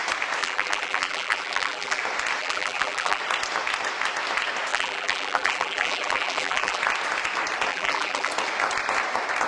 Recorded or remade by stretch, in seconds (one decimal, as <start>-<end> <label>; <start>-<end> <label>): 0.0-0.4 recorded; 0.4-2.0 remade; 2.0-2.4 recorded; 2.4-3.2 remade; 3.2-4.7 recorded; 4.7-6.8 remade; 6.8-7.7 recorded; 7.7-8.3 remade; 8.3-9.5 recorded